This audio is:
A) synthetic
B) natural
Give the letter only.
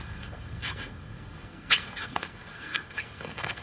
A